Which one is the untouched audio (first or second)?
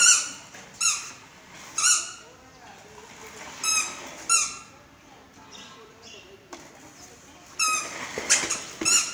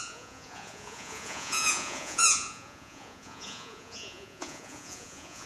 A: first